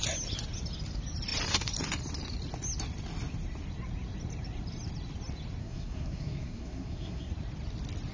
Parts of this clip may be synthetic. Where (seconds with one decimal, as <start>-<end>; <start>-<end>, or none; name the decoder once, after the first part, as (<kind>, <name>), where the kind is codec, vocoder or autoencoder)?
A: 5.6-7.3 (codec, SNAC)